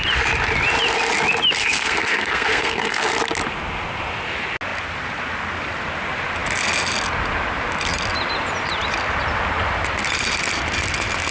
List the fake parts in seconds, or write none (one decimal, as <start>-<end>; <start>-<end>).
1.6-3.1